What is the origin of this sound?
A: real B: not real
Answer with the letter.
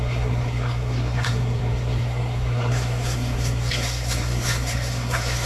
B